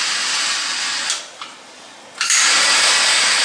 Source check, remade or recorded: recorded